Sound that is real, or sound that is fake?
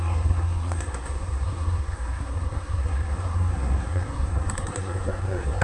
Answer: fake